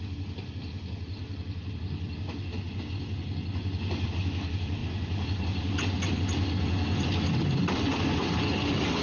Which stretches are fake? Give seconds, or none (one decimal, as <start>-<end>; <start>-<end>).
none